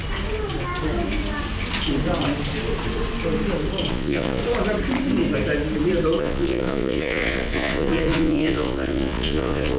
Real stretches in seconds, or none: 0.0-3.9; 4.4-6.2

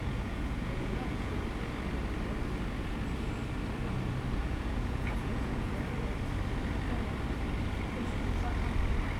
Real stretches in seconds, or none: 1.4-4.4; 5.7-9.2